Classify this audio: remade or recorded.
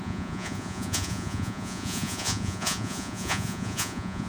remade